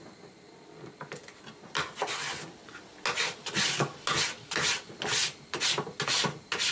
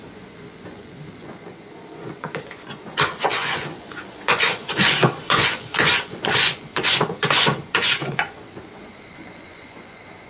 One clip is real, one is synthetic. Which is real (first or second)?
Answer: first